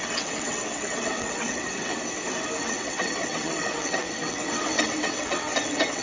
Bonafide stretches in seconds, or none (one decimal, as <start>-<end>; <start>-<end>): 1.9-2.6